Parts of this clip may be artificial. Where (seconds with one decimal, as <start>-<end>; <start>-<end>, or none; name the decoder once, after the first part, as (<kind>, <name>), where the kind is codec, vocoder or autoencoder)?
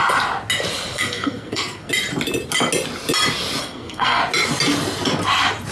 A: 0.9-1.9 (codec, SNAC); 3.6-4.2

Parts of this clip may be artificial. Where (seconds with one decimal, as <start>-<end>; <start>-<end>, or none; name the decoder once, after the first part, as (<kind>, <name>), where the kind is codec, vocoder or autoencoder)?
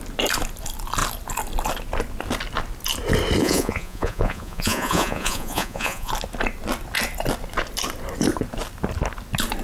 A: 3.4-6.1 (vocoder, Vocos)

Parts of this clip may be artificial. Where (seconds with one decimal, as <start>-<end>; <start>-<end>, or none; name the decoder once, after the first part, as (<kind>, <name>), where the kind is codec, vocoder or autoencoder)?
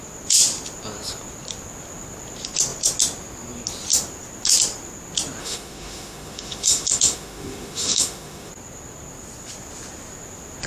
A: 5.4-8.5 (autoencoder, DAC-VAE)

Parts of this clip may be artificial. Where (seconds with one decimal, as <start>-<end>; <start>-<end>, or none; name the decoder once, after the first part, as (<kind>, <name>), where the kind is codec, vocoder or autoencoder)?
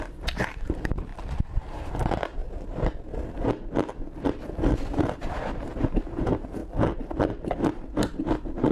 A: 0.0-2.4 (vocoder, BigVGAN v2); 5.0-6.6; 8.2-8.7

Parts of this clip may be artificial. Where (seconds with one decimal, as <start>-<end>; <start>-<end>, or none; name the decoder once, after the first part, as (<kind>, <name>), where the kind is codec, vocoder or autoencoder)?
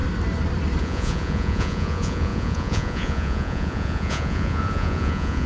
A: 0.8-5.5 (vocoder, Vocos)